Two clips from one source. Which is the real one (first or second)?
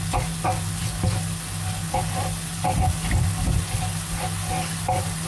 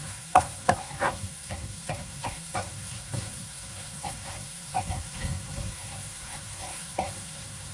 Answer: first